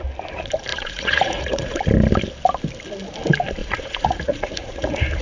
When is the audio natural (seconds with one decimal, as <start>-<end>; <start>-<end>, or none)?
0.0-0.7; 1.8-3.6